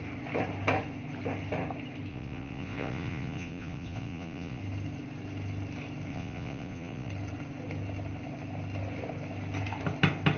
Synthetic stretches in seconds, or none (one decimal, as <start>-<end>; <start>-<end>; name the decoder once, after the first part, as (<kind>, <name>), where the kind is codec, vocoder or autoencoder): 2.1-4.6 (vocoder, Vocos); 6.1-7.1

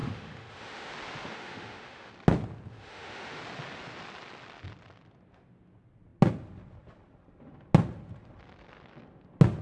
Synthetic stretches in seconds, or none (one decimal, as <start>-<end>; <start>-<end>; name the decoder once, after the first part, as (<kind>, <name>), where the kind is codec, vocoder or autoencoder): 0.0-0.9 (autoencoder, DAC-VAE); 1.3-2.1; 2.7-3.4

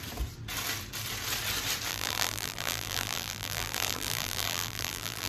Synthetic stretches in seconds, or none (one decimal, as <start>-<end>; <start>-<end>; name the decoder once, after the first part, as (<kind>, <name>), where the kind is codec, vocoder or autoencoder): 1.9-5.3 (vocoder, BigVGAN v2)

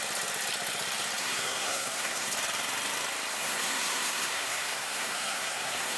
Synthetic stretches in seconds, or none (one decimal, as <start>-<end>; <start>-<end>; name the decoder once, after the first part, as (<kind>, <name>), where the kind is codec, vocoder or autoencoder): 1.2-2.3 (codec, SNAC); 3.3-6.0

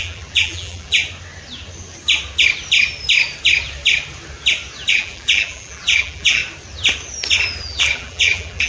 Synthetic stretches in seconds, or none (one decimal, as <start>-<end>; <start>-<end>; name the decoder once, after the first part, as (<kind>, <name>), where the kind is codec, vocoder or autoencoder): 0.0-1.0 (vocoder, BigVGAN v2); 4.9-6.4; 7.6-8.7

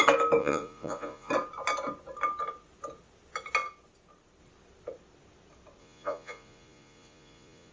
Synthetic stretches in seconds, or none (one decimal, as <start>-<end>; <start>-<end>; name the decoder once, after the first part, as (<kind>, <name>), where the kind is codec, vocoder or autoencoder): 0.4-1.3 (vocoder, Vocos); 5.8-7.7

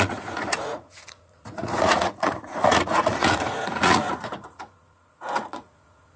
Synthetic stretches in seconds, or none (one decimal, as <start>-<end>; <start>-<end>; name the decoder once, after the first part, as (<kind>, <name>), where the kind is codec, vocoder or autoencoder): 0.0-6.2 (vocoder, Vocos)